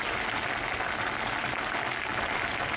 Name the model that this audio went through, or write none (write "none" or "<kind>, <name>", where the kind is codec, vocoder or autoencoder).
none